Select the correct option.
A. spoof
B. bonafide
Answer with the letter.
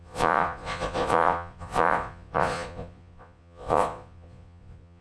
A